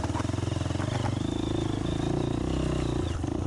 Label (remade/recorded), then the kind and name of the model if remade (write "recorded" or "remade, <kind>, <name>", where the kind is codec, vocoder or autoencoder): recorded